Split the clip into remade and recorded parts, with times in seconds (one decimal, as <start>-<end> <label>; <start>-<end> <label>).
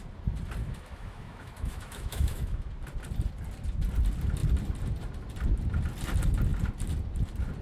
0.0-0.6 recorded; 0.6-2.7 remade; 2.7-7.6 recorded